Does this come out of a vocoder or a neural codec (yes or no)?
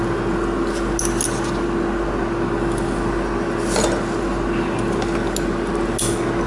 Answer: no